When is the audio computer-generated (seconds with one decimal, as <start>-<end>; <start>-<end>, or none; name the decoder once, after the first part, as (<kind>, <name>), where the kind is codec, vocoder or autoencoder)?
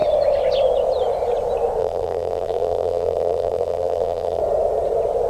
1.8-4.4 (vocoder, BigVGAN v2)